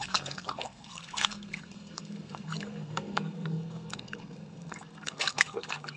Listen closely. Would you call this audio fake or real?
fake